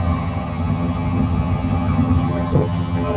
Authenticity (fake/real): fake